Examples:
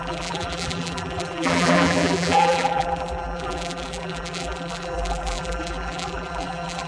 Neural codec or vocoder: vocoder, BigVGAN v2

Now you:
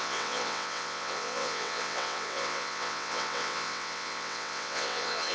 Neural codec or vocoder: vocoder, WaveNeXt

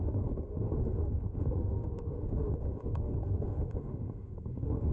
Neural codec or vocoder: autoencoder, DAC-VAE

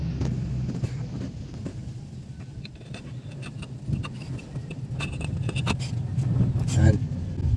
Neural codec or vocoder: none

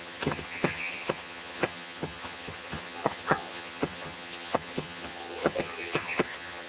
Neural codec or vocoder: vocoder, HiFi-GAN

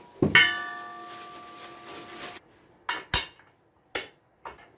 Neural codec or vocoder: none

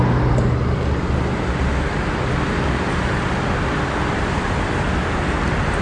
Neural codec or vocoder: none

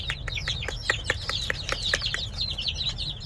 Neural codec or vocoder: none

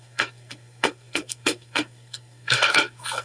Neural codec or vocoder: codec, SNAC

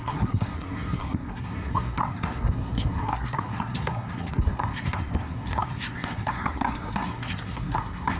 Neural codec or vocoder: codec, SNAC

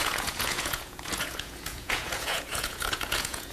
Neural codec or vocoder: vocoder, Vocos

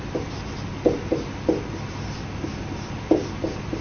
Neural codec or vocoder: none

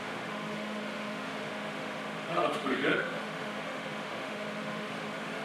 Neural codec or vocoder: autoencoder, DAC-VAE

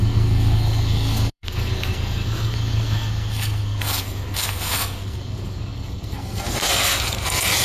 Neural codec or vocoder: codec, SNAC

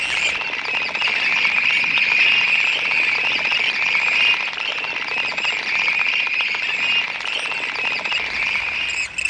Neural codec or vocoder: none